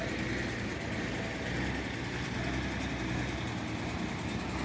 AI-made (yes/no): no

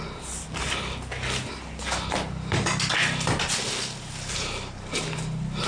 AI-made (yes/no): no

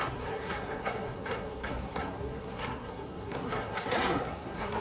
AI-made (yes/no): yes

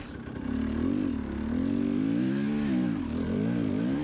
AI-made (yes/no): no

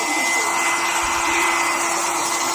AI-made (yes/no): no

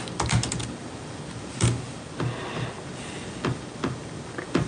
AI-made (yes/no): no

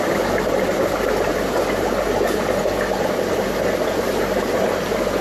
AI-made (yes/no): no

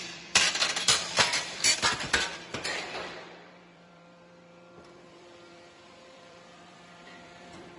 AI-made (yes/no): yes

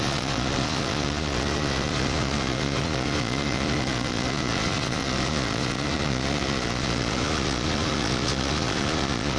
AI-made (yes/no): yes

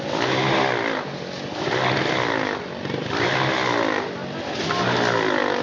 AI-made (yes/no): no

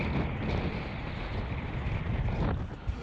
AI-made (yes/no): no